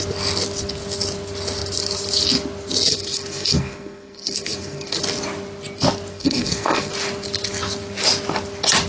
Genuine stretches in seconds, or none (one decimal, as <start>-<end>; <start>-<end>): 0.0-2.9; 5.0-6.1; 6.9-8.9

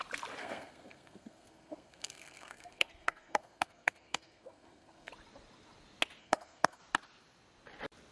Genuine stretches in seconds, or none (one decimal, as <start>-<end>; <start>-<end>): 0.0-0.4; 5.1-6.2; 6.8-8.1

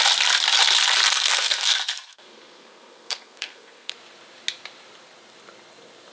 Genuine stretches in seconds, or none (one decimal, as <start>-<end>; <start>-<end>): 0.0-1.0; 3.9-6.1

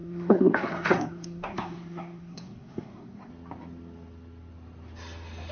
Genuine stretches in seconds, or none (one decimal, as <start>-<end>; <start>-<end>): 3.3-5.5

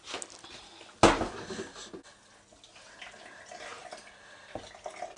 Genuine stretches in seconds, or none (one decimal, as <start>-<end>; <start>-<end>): 0.0-5.2

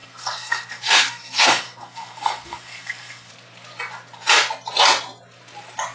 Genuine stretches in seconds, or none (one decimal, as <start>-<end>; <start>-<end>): 3.3-5.9

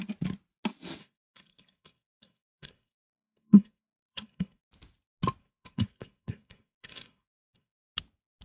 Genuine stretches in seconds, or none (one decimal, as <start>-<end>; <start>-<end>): 0.0-1.0; 4.6-5.4; 7.8-8.4

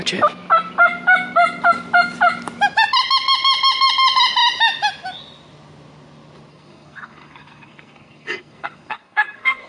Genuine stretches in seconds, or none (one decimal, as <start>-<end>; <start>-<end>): 0.0-6.5